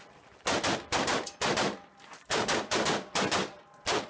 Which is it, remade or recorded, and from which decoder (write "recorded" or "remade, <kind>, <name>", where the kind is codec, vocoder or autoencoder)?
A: remade, vocoder, BigVGAN v2